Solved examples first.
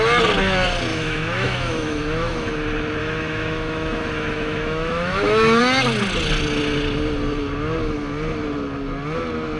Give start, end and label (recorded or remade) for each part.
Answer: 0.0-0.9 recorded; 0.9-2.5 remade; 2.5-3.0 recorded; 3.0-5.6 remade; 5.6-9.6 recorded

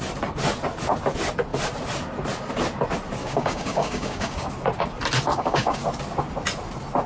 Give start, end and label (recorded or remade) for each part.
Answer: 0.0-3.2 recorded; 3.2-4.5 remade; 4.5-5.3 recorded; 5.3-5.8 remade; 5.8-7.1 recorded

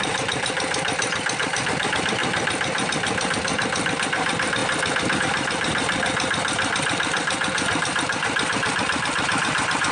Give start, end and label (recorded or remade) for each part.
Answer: 0.0-2.2 remade; 2.2-3.3 recorded; 3.3-4.6 remade; 4.6-5.2 recorded; 5.2-9.9 remade

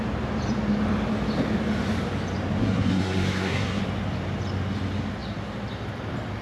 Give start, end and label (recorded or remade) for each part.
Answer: 0.0-2.6 recorded; 2.6-3.8 remade; 3.8-6.4 recorded

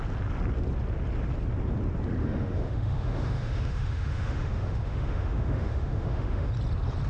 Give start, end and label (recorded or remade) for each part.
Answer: 0.0-2.2 recorded; 2.2-6.5 remade; 6.5-7.1 recorded

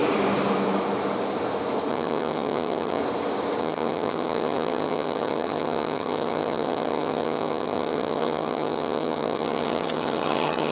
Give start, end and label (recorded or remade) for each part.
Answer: 0.0-1.9 recorded; 1.9-3.0 remade; 3.0-3.6 recorded; 3.6-10.7 remade

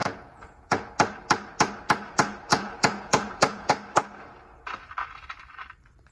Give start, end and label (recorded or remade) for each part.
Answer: 0.0-0.9 remade; 0.9-2.5 recorded; 2.5-3.7 remade; 3.7-6.1 recorded